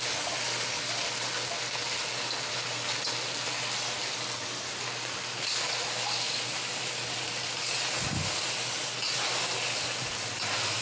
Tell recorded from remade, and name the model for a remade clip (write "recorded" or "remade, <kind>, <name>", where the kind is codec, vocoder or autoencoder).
recorded